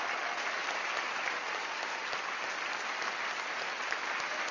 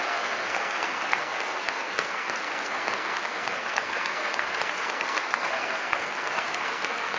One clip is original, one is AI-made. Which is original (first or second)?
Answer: first